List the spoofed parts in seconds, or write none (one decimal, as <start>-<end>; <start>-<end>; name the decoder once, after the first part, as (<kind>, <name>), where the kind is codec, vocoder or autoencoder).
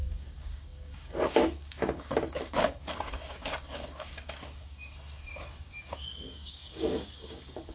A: 0.0-7.7 (codec, DAC)